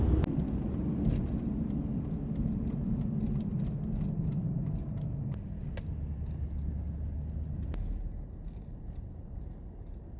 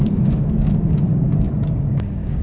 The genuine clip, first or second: first